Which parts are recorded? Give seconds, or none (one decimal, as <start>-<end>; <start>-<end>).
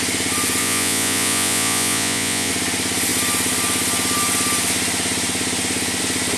0.0-0.6; 2.5-6.4